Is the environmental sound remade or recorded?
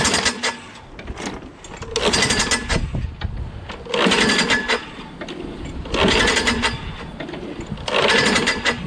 recorded